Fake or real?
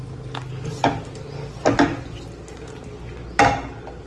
real